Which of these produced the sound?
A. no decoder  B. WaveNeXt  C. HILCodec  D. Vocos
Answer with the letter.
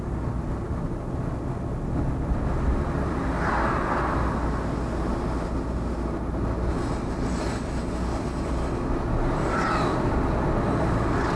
A